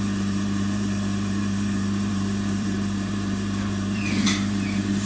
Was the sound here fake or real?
fake